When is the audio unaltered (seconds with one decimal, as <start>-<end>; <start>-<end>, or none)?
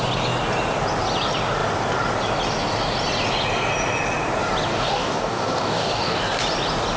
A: 0.0-4.7; 6.2-7.0